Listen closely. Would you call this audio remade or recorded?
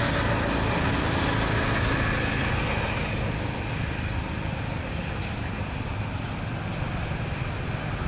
recorded